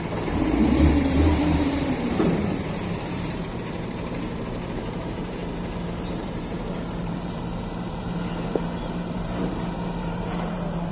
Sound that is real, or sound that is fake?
fake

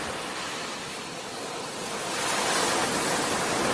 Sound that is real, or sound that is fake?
real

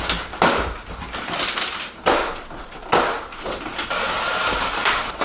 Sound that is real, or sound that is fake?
real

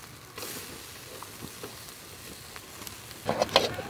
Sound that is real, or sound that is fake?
real